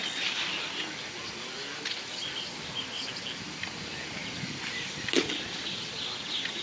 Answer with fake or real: real